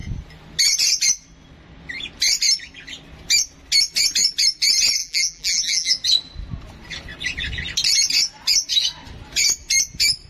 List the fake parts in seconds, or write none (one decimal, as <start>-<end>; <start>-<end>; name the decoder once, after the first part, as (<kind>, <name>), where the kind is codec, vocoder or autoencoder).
5.0-5.9 (vocoder, BigVGAN v2)

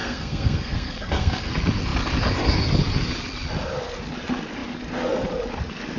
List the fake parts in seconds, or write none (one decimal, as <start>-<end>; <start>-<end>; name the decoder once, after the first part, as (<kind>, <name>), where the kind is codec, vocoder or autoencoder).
0.0-1.5 (codec, SNAC)

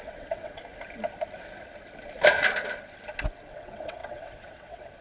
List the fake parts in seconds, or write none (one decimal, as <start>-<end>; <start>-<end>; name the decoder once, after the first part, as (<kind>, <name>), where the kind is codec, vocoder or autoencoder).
0.0-0.6 (vocoder, WaveNeXt); 3.5-5.0

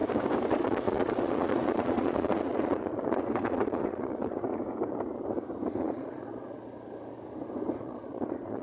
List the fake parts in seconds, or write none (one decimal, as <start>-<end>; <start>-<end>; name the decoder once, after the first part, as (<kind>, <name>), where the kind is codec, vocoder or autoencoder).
0.5-4.5 (vocoder, Vocos); 5.8-6.6; 7.8-8.6

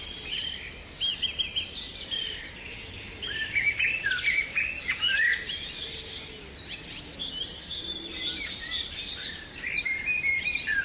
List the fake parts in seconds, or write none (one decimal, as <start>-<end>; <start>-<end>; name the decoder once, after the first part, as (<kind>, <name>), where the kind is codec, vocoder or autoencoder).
none

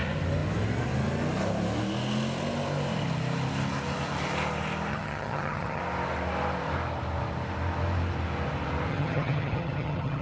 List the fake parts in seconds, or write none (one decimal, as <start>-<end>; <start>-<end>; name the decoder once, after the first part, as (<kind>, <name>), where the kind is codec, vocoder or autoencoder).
4.9-5.8 (vocoder, HiFi-GAN); 8.9-10.2

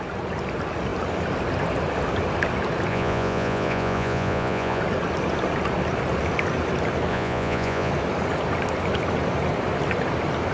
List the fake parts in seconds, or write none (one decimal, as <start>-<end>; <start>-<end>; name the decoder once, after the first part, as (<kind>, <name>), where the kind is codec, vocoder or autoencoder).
2.9-4.8 (vocoder, Vocos); 7.1-7.9